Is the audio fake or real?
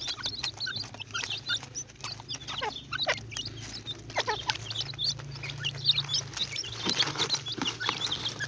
real